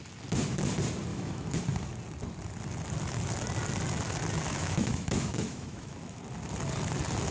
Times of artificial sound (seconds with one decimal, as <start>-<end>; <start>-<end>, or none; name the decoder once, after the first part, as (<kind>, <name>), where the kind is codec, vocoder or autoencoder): 1.1-1.6 (autoencoder, DAC-VAE); 4.5-6.2